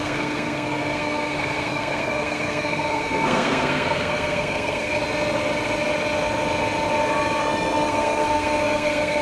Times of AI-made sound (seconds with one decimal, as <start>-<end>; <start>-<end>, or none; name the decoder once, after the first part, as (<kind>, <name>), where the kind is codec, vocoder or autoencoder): 0.0-5.0 (codec, SNAC); 7.4-9.2